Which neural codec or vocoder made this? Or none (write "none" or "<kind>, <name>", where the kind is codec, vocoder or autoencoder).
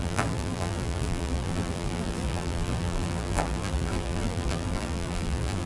vocoder, BigVGAN v2